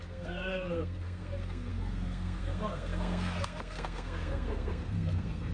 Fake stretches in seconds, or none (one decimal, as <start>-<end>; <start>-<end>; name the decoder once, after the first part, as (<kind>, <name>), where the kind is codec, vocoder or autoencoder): 0.0-5.5 (codec, SNAC)